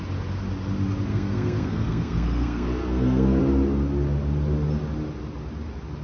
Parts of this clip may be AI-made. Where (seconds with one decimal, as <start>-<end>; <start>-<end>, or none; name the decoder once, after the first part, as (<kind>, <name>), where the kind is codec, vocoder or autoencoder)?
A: 1.1-3.4 (codec, SNAC)